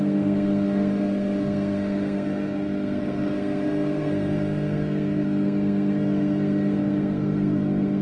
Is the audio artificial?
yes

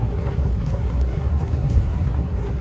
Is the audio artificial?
yes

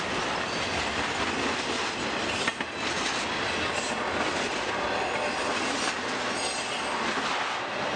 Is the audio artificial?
no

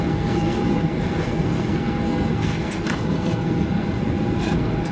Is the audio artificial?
yes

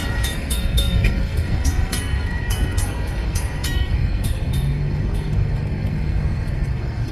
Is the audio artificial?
yes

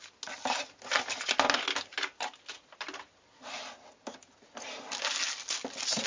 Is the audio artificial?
no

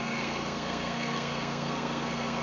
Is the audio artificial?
yes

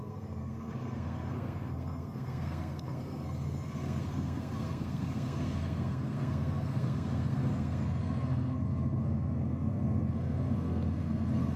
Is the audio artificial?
yes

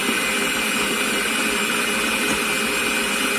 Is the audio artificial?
no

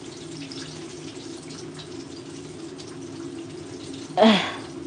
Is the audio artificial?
no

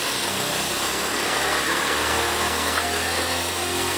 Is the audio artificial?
yes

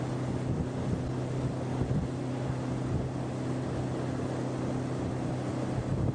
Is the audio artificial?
no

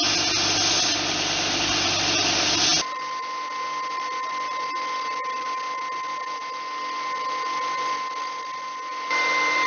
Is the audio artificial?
no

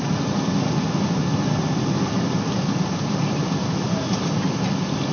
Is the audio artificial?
no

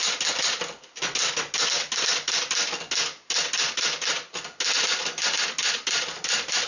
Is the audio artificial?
no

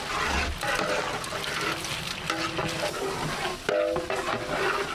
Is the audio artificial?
no